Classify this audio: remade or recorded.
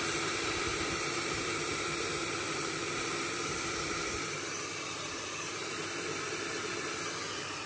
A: remade